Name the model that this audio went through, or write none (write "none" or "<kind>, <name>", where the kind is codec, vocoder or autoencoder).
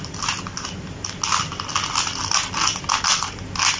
none